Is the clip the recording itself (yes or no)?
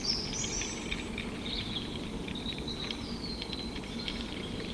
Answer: yes